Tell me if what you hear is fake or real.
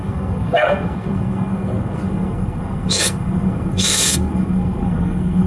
fake